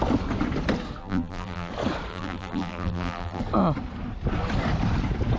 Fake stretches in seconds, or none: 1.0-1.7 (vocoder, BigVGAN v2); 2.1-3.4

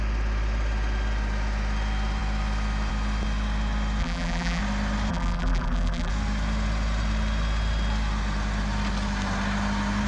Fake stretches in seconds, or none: 4.0-4.6 (vocoder, BigVGAN v2); 5.1-6.1

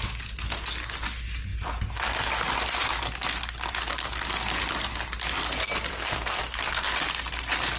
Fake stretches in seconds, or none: 5.9-6.4 (codec, SNAC)